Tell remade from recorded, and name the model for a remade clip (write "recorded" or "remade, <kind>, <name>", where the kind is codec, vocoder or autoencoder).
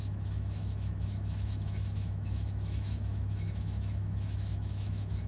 remade, autoencoder, DAC-VAE